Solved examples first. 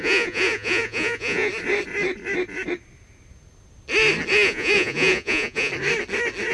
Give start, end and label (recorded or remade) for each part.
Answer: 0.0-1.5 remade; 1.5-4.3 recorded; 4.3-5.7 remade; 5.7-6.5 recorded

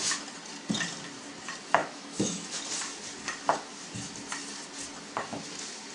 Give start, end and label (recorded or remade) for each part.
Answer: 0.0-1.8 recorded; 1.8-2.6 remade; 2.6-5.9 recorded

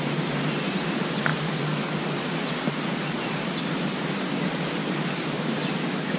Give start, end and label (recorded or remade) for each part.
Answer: 0.0-4.8 recorded; 4.8-6.2 remade

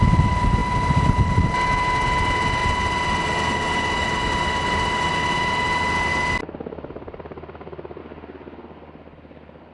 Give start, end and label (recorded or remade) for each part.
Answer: 0.0-9.7 recorded

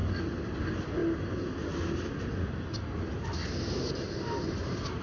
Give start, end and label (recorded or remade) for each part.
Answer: 0.0-5.0 recorded